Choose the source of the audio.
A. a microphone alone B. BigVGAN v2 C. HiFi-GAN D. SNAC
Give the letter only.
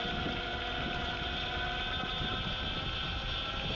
A